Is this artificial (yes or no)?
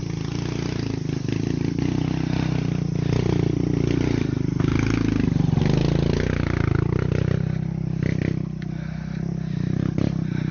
no